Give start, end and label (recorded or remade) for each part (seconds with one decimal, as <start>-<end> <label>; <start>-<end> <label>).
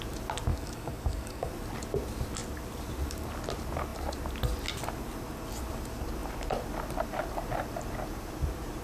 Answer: 0.0-0.5 recorded; 0.5-1.5 remade; 1.5-8.8 recorded